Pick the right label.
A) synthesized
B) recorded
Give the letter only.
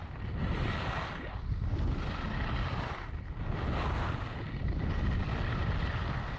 B